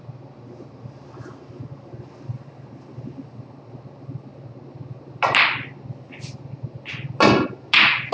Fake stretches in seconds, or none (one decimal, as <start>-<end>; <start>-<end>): none